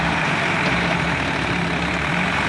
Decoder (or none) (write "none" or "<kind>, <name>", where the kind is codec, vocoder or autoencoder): vocoder, BigVGAN v2